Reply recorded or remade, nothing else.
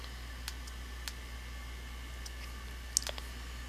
recorded